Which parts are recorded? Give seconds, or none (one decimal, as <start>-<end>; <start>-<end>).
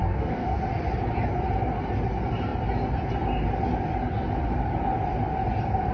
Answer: 0.6-5.9